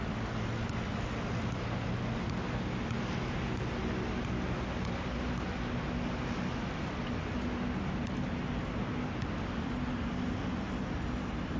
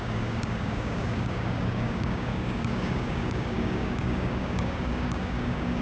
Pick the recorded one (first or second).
first